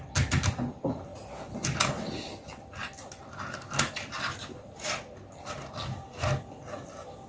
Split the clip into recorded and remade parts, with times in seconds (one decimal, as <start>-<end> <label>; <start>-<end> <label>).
0.0-7.3 recorded